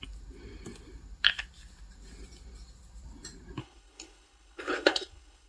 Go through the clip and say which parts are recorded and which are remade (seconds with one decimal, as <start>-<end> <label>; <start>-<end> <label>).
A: 0.0-3.6 recorded; 3.6-5.5 remade